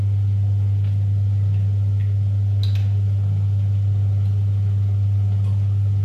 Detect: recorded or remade recorded